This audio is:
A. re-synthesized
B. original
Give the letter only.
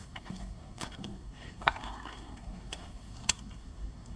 A